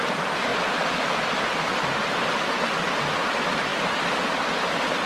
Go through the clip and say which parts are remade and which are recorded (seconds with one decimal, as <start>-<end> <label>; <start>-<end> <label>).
0.0-5.1 recorded